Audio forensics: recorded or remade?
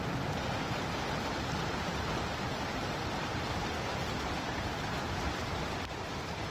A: recorded